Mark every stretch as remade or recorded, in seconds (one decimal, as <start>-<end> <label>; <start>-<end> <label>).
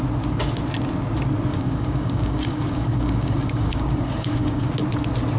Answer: 0.0-1.5 recorded; 1.5-4.7 remade; 4.7-5.4 recorded